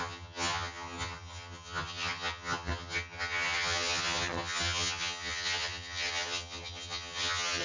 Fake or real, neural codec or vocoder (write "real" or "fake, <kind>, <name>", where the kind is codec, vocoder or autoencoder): fake, vocoder, HiFi-GAN